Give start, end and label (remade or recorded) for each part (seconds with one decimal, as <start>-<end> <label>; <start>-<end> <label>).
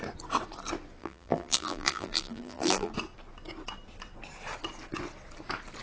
0.0-1.0 recorded; 1.0-2.9 remade; 2.9-5.8 recorded